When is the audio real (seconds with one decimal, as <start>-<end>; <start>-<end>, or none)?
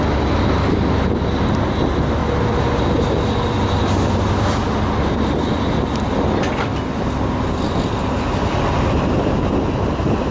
0.0-10.3